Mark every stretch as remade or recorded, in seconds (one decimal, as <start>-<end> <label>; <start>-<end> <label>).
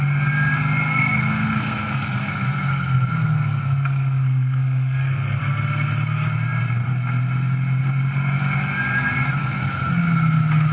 0.0-0.9 recorded; 0.9-5.4 remade; 5.4-9.4 recorded; 9.4-9.9 remade; 9.9-10.7 recorded